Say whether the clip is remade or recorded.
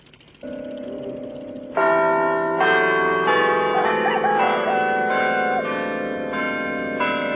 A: recorded